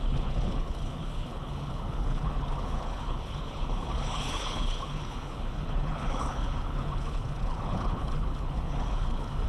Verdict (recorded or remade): remade